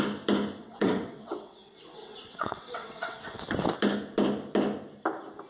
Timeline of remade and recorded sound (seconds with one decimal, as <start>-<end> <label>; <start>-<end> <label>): 0.0-0.6 recorded; 0.6-3.4 remade; 3.4-5.5 recorded

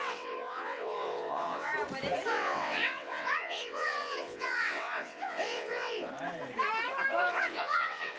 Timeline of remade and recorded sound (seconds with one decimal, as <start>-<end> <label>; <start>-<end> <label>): 0.0-1.7 remade; 1.7-2.3 recorded; 2.3-6.1 remade; 6.1-7.3 recorded; 7.3-8.2 remade

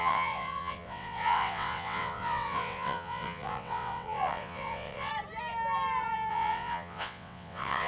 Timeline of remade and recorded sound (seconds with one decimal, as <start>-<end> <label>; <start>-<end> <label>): 0.0-5.1 remade; 5.1-6.3 recorded; 6.3-7.9 remade

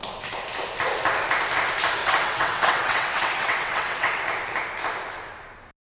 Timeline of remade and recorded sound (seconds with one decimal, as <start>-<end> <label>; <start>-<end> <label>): 0.0-2.0 recorded; 2.0-4.2 remade; 4.2-6.0 recorded

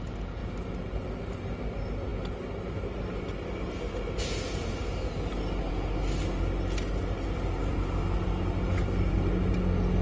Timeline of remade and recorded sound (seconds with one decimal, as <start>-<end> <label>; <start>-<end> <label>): 0.0-10.0 recorded

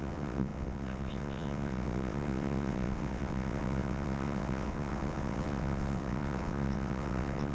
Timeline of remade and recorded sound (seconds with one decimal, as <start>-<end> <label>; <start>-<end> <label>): 0.0-7.5 remade